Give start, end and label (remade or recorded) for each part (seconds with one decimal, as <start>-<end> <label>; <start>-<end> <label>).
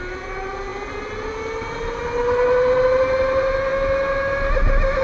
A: 0.0-5.0 recorded